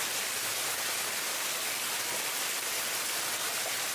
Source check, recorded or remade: recorded